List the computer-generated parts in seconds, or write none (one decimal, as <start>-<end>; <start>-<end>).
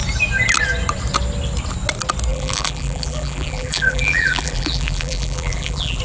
2.3-6.0